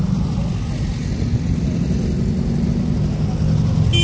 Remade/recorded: recorded